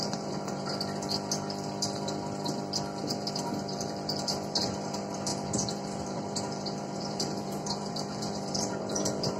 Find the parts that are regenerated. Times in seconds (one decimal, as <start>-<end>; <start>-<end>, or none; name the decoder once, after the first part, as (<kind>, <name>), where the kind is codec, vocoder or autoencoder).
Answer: 0.0-0.7 (vocoder, BigVGAN v2); 3.0-9.4

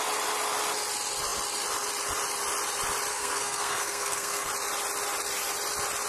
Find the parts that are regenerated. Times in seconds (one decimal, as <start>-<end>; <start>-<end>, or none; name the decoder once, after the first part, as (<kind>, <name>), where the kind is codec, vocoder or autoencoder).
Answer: 3.1-4.5 (codec, SNAC)

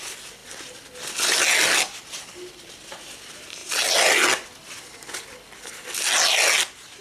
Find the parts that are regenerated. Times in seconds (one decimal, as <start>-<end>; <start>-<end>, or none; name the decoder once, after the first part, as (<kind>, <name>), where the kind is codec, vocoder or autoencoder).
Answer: none

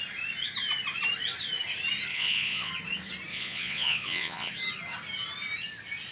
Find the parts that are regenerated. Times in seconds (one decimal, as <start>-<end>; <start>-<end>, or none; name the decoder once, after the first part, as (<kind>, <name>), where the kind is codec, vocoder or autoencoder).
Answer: 2.1-2.7 (vocoder, Vocos); 3.3-4.5